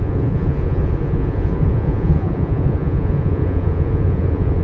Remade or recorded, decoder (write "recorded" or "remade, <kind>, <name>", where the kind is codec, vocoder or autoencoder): remade, vocoder, Vocos